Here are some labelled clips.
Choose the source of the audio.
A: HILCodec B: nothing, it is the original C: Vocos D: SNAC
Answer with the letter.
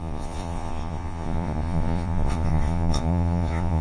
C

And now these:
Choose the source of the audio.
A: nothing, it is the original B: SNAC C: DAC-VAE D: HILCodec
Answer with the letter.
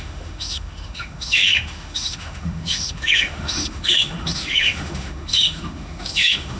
C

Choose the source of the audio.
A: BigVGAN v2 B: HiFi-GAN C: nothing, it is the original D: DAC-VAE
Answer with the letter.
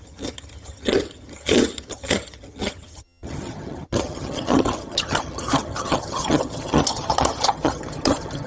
B